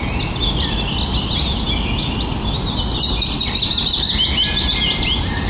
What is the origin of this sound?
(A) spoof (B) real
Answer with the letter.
B